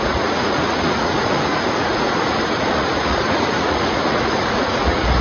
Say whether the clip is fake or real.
fake